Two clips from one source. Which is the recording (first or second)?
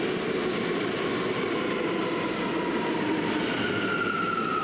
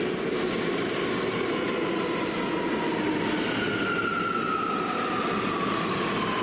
second